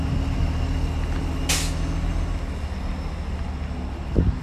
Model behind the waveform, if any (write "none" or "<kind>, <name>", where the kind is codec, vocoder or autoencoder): none